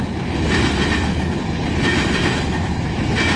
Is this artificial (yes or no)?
no